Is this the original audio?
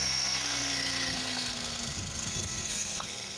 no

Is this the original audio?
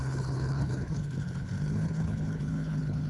no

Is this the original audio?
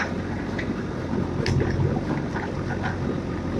yes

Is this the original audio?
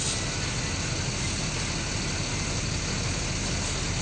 yes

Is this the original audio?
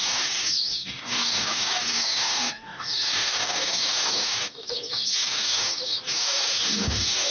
no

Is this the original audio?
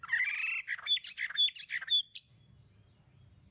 yes